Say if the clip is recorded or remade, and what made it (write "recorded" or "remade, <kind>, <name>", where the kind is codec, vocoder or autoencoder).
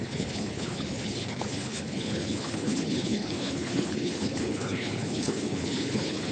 remade, codec, HILCodec